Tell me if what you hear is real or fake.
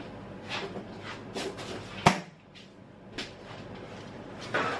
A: real